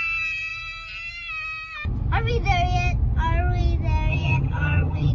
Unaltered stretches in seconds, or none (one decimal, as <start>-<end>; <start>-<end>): 0.0-4.1